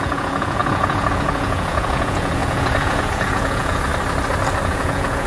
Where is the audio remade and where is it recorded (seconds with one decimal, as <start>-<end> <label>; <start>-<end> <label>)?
0.0-3.9 remade; 3.9-4.6 recorded; 4.6-5.3 remade